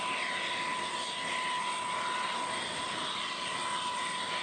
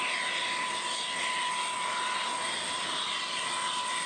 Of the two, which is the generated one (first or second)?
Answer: first